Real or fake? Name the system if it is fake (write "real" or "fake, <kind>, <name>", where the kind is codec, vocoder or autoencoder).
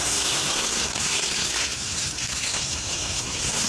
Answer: fake, codec, SNAC